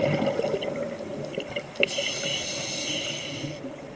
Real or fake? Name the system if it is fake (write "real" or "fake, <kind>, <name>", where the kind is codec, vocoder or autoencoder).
real